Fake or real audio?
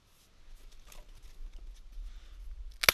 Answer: real